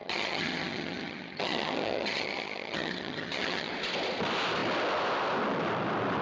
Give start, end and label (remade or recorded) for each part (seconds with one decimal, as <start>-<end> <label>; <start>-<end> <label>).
0.0-3.7 remade; 3.7-6.2 recorded